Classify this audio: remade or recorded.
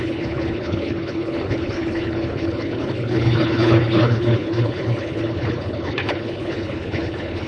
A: remade